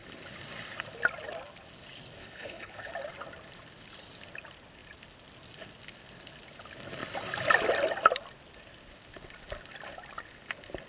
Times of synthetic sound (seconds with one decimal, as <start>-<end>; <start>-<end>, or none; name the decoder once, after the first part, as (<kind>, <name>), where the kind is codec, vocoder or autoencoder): 2.2-2.9 (codec, HILCodec)